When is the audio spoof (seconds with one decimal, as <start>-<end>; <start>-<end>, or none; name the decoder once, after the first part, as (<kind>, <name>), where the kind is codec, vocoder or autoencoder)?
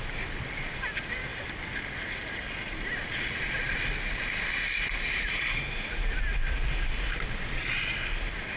none